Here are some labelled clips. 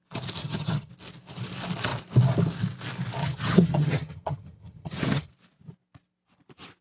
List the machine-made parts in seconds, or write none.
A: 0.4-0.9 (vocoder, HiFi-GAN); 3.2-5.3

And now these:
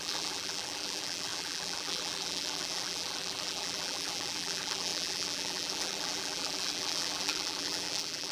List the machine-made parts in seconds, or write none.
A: 0.0-8.3 (vocoder, BigVGAN v2)

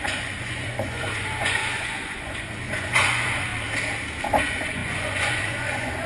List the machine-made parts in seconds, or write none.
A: 0.0-3.5 (vocoder, Vocos); 4.3-6.1

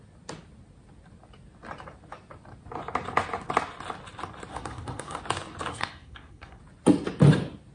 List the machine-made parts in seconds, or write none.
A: 4.5-5.2 (codec, SNAC); 5.7-6.6

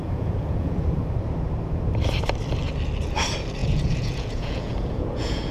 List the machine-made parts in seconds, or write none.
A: 0.0-1.0 (vocoder, Vocos); 3.6-5.5

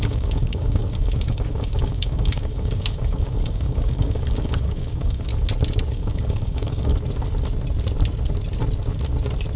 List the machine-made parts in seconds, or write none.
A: 0.0-5.3 (codec, DAC); 5.9-6.9

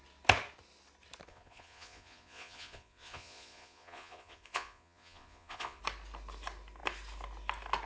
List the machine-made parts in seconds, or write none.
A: 1.3-5.8 (vocoder, Vocos)

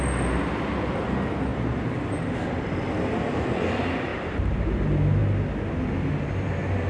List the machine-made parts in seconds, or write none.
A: 1.5-2.2 (vocoder, BigVGAN v2); 4.1-4.7